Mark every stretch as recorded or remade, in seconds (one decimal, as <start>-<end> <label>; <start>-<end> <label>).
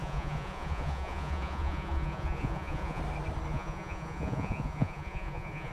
0.0-3.0 remade; 3.0-3.5 recorded; 3.5-5.7 remade